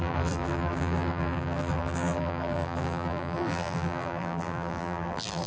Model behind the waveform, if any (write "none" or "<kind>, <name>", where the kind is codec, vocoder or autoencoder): vocoder, BigVGAN v2